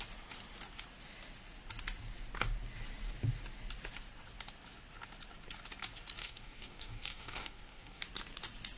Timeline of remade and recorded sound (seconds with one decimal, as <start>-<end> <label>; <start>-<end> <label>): 0.0-6.2 recorded; 6.2-8.0 remade; 8.0-8.8 recorded